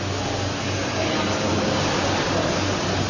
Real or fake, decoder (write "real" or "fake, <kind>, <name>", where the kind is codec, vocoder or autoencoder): real